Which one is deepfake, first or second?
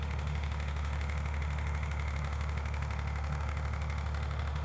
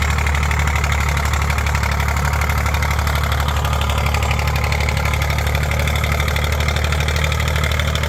first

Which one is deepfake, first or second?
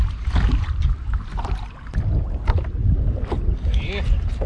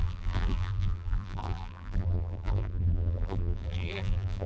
second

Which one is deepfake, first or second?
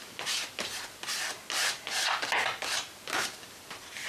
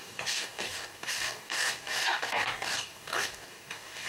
second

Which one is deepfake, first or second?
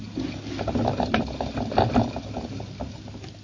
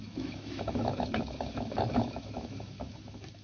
second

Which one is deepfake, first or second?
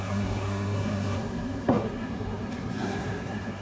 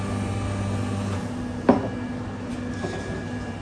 first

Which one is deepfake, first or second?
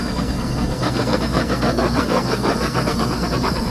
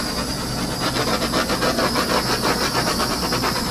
first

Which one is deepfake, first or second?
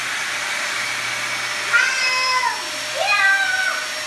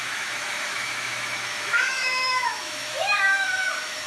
second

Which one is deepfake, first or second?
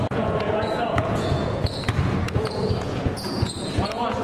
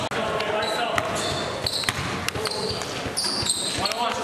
first